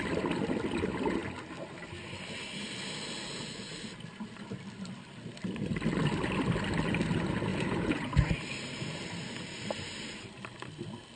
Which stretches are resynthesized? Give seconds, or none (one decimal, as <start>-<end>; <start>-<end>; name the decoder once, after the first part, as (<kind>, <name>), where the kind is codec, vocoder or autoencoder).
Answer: 7.5-8.1 (vocoder, Vocos)